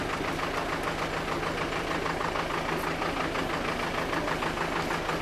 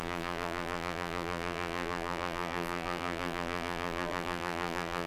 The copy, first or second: second